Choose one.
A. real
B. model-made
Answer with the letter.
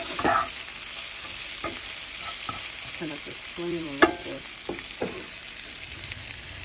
B